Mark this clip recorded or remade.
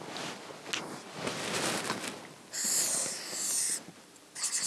recorded